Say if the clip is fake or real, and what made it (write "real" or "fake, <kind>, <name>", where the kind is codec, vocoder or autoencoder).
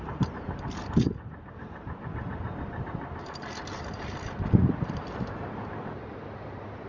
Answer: fake, vocoder, BigVGAN v2